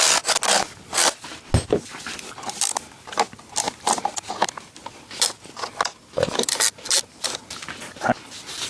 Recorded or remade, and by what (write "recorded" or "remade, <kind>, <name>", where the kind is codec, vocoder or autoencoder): recorded